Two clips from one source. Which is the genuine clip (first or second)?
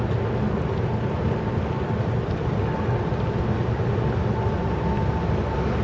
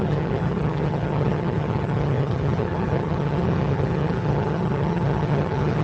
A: first